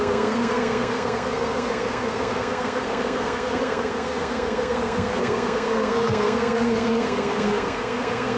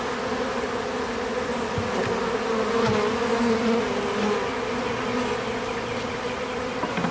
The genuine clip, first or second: second